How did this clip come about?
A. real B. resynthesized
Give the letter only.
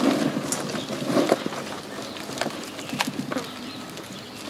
A